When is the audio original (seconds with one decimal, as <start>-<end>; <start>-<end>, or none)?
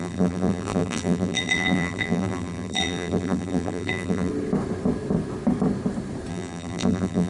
4.3-6.3